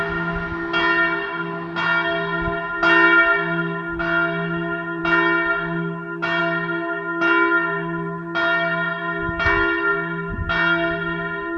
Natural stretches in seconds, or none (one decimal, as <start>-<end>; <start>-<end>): 0.0-11.6

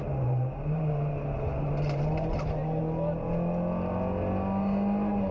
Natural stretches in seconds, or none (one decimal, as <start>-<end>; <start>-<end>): 2.8-5.3

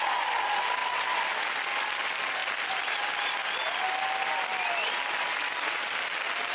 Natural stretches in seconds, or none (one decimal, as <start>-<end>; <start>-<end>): 0.0-6.5

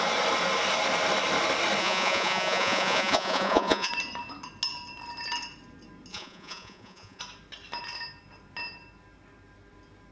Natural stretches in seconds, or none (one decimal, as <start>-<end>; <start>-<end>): 0.0-1.8; 3.9-6.1; 7.2-10.1

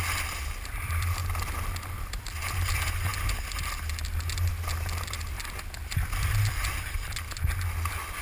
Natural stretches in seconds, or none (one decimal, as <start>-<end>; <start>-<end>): 1.2-1.9; 3.1-6.2

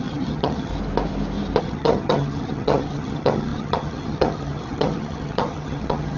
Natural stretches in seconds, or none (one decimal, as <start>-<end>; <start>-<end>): 0.7-1.6